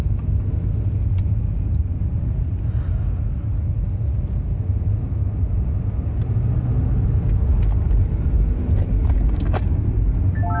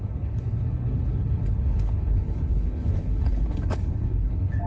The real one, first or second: first